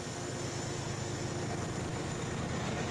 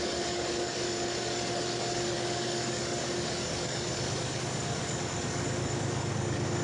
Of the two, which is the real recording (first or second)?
first